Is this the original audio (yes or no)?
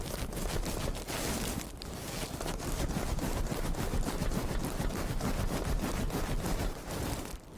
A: yes